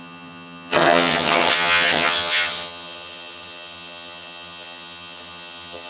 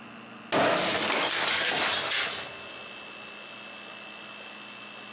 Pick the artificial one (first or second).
first